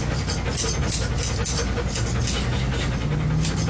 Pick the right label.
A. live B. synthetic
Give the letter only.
A